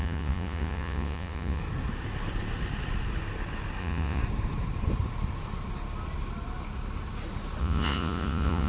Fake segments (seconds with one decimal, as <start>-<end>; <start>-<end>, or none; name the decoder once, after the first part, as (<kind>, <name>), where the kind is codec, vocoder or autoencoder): 0.0-1.6 (vocoder, Vocos); 3.8-4.2; 7.6-8.7